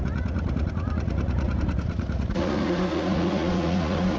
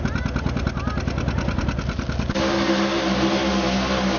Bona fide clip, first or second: second